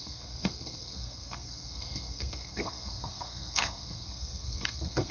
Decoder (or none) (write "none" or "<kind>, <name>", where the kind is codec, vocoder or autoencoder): codec, SNAC